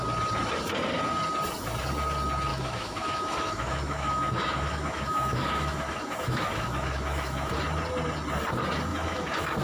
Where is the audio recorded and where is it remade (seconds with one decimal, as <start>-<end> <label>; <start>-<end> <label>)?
0.0-2.5 recorded; 2.5-7.5 remade; 7.5-8.9 recorded; 8.9-9.6 remade